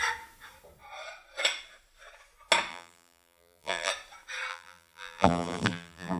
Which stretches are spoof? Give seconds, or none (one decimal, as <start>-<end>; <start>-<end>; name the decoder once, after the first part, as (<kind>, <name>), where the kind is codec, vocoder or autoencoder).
2.7-3.9 (vocoder, BigVGAN v2); 4.5-6.2